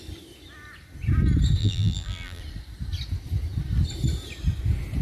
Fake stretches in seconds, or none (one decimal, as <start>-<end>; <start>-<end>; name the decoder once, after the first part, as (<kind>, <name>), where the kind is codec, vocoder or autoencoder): 1.6-2.4 (vocoder, BigVGAN v2)